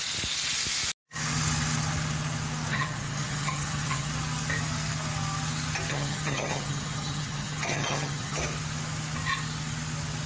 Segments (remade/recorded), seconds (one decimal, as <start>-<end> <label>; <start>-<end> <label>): 0.0-2.7 recorded; 2.7-4.1 remade; 4.1-5.9 recorded; 5.9-8.4 remade; 8.4-10.3 recorded